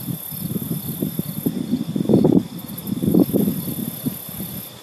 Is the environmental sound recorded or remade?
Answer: recorded